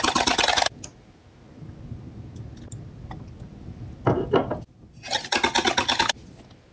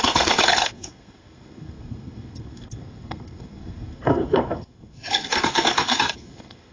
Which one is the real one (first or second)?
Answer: first